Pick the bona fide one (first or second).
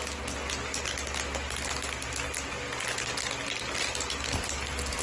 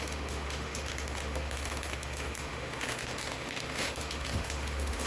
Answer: first